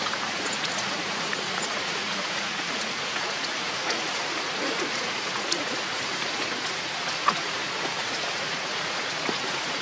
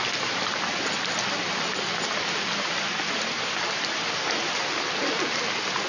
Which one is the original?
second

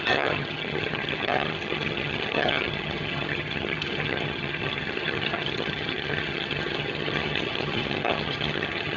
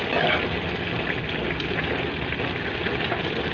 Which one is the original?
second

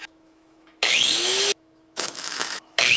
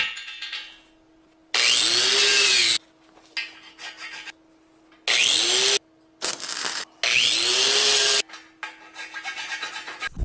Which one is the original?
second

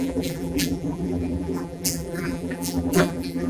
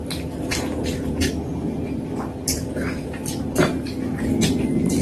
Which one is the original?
second